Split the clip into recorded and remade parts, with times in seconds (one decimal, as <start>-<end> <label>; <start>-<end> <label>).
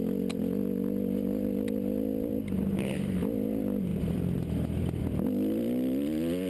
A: 0.0-6.5 recorded